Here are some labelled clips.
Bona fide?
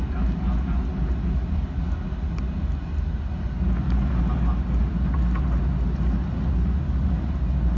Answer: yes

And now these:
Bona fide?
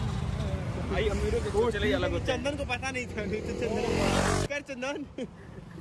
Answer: yes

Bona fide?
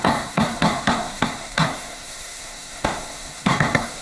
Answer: no